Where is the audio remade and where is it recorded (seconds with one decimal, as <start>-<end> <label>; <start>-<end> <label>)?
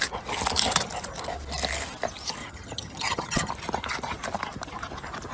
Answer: 0.0-2.4 recorded; 2.4-3.5 remade; 3.5-5.3 recorded